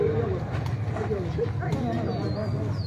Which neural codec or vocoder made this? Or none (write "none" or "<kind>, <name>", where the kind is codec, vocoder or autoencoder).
none